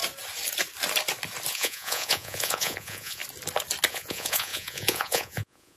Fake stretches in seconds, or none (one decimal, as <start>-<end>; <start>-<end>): 1.5-3.2; 3.9-5.8